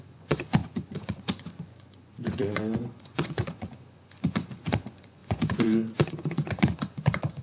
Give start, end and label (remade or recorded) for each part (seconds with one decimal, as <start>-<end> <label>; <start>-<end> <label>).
0.0-7.4 remade